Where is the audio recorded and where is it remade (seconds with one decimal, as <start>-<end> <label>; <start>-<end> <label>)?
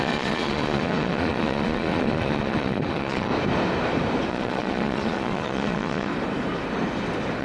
0.0-3.3 remade; 3.3-4.3 recorded; 4.3-6.1 remade; 6.1-7.4 recorded